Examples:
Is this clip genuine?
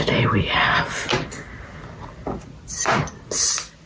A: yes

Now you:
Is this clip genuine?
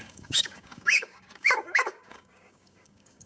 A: no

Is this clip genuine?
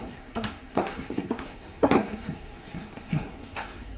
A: no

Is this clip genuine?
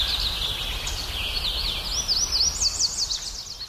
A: yes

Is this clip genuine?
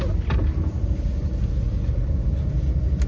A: yes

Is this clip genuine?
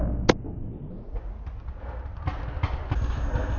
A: yes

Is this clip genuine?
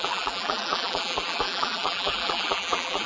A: no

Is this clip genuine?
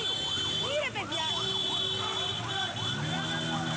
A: yes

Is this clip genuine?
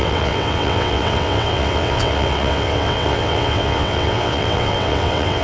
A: no